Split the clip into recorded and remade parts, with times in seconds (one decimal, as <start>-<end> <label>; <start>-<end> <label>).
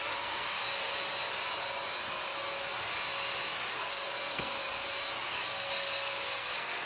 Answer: 0.0-0.6 remade; 0.6-3.7 recorded; 3.7-4.6 remade; 4.6-5.3 recorded; 5.3-6.9 remade